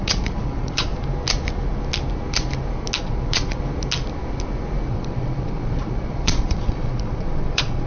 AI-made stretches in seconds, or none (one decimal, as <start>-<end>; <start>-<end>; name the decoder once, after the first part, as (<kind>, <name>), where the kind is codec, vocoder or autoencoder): 0.0-0.9 (vocoder, Vocos); 3.0-3.6; 4.9-7.9